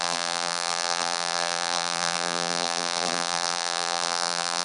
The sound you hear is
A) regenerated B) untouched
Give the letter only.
A